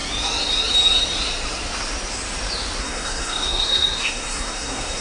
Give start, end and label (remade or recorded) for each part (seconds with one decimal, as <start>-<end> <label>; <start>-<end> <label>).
0.0-2.8 recorded; 2.8-5.0 remade